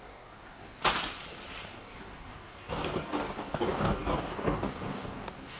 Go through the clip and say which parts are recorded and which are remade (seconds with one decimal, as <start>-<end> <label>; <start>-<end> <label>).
0.0-0.8 remade; 0.8-1.7 recorded; 1.7-5.6 remade